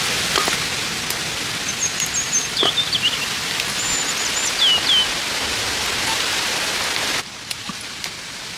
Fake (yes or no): no